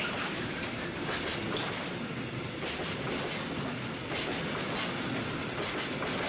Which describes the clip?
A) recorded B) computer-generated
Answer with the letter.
A